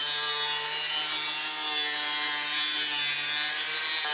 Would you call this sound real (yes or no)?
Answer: yes